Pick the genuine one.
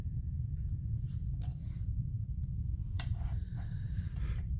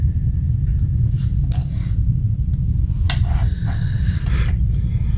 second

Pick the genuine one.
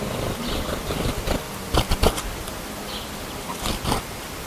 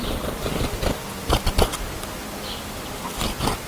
second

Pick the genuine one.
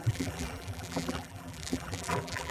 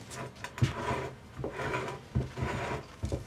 second